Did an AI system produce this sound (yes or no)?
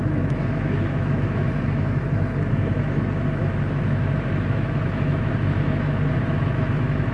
yes